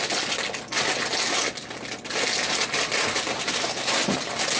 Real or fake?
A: real